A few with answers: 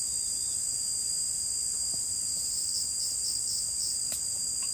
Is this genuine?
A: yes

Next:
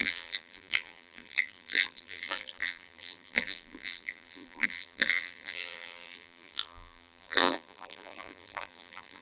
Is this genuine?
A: no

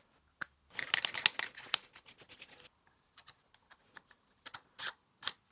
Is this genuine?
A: yes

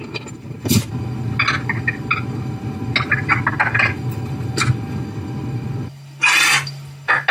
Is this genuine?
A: yes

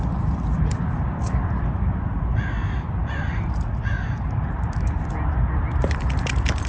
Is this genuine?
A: no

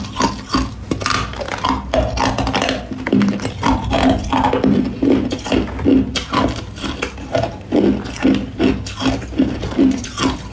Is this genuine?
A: yes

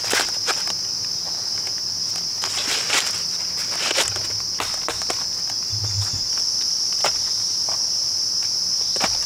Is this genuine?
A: yes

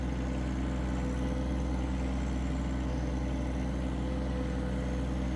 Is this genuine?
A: yes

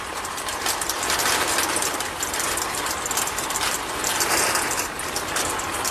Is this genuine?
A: no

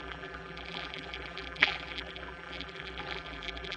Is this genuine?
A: no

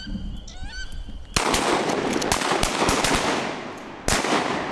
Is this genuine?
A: yes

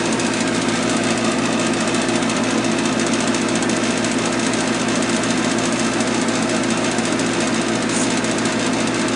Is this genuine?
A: yes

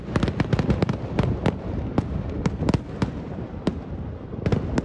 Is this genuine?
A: yes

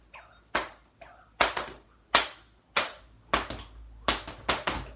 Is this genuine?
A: yes